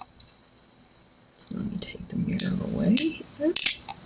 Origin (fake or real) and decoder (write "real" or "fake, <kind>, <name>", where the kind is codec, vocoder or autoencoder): real